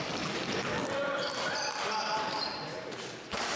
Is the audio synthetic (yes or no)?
no